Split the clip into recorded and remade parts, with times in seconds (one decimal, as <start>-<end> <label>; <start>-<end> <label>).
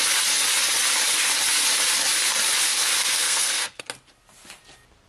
0.0-3.0 recorded; 3.0-3.8 remade; 3.8-5.1 recorded